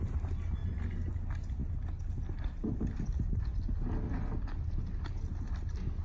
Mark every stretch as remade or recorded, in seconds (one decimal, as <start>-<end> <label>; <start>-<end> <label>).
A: 0.0-6.0 recorded